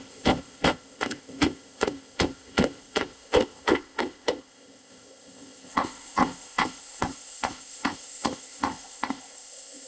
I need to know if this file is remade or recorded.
remade